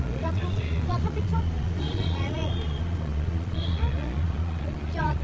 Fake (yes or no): yes